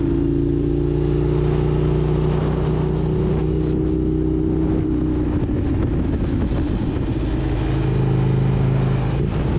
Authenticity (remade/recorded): recorded